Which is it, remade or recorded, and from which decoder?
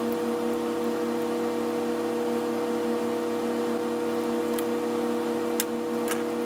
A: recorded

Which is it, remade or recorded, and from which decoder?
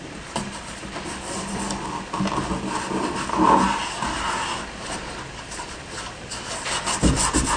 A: recorded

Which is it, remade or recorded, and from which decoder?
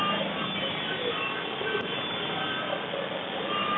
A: recorded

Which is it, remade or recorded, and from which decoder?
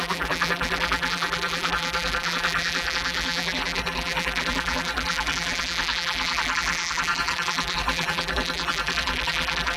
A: remade, vocoder, BigVGAN v2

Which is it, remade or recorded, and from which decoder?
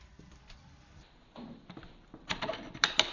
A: remade, vocoder, BigVGAN v2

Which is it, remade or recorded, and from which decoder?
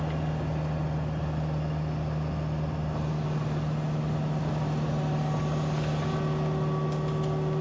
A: recorded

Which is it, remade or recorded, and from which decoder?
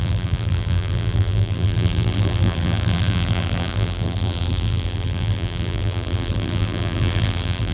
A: remade, vocoder, BigVGAN v2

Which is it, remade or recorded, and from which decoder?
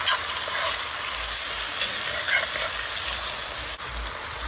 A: recorded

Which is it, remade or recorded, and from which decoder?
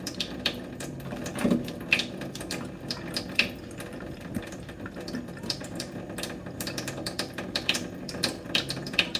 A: remade, vocoder, BigVGAN v2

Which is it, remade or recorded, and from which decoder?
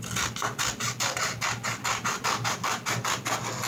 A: recorded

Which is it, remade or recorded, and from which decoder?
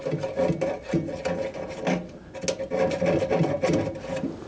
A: recorded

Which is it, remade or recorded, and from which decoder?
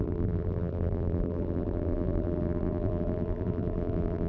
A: remade, vocoder, BigVGAN v2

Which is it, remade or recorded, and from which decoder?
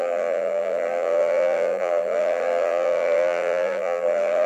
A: remade, vocoder, BigVGAN v2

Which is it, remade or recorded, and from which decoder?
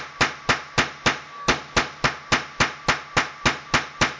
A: recorded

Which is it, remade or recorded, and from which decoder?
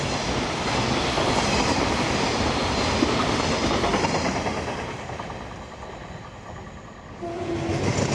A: recorded